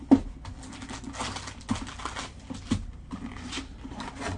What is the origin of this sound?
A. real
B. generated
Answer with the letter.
A